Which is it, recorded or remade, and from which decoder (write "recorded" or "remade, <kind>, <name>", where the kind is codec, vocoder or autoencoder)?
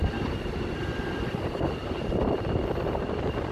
recorded